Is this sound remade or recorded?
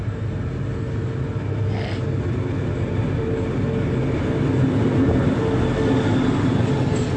recorded